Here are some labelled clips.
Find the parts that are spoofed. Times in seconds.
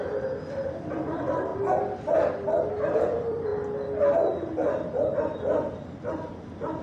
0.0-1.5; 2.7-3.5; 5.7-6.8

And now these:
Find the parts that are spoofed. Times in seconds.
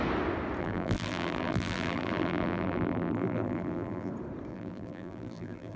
0.6-4.1; 4.5-5.8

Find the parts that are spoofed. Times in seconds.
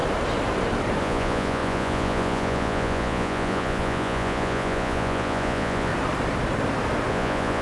1.0-5.9; 7.1-7.6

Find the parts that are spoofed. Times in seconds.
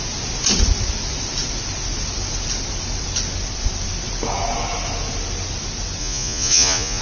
6.0-7.0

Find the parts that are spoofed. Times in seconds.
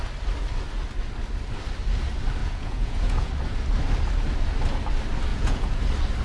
2.4-3.3; 5.3-5.8